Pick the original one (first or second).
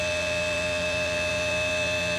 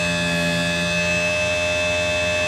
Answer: second